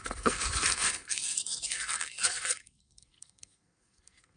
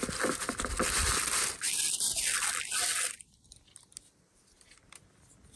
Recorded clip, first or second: second